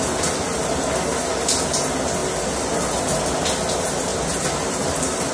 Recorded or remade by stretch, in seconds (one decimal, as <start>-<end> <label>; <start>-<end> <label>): 0.0-5.3 recorded

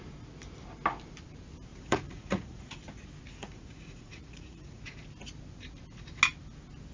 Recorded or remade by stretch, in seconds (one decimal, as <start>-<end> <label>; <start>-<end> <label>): 0.0-1.7 recorded; 1.7-2.8 remade; 2.8-3.4 recorded; 3.4-4.8 remade; 4.8-6.9 recorded